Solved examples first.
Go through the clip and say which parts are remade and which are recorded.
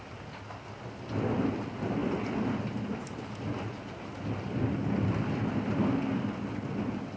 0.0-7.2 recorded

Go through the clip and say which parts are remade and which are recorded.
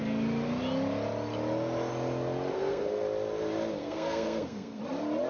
0.0-2.5 recorded; 2.5-3.0 remade; 3.0-3.8 recorded; 3.8-4.8 remade; 4.8-5.3 recorded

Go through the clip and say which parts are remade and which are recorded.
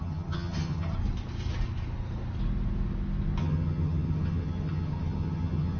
0.0-0.9 remade; 0.9-3.4 recorded; 3.4-5.8 remade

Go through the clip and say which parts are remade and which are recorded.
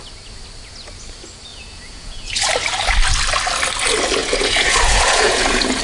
0.0-1.5 recorded; 1.5-2.5 remade; 2.5-4.2 recorded; 4.2-5.8 remade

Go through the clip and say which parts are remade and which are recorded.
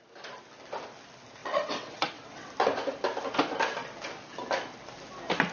0.0-1.4 recorded; 1.4-2.5 remade; 2.5-5.5 recorded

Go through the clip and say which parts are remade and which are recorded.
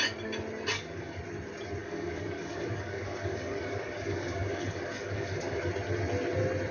0.0-0.7 recorded; 0.7-1.2 remade; 1.2-1.8 recorded; 1.8-5.7 remade; 5.7-6.7 recorded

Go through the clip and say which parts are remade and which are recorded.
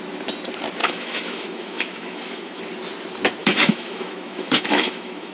0.0-0.8 recorded; 0.8-2.6 remade; 2.6-3.4 recorded; 3.4-5.3 remade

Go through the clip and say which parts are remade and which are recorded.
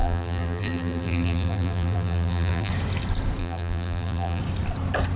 0.0-2.7 remade; 2.7-3.4 recorded; 3.4-4.4 remade; 4.4-5.2 recorded